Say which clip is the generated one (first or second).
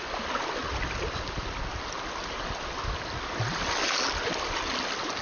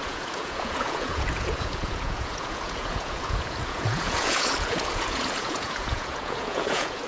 second